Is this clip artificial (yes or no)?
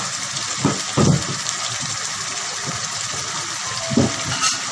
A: no